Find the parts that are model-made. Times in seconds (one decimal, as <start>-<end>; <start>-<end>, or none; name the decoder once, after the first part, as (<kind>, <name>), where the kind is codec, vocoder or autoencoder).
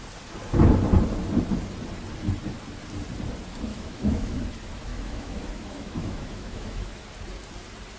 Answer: 3.7-4.4 (autoencoder, DAC-VAE); 4.9-7.0